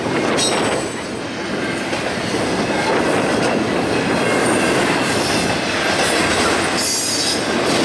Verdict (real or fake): real